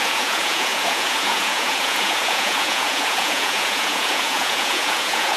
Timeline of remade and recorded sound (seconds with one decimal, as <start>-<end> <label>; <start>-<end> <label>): 0.0-5.4 remade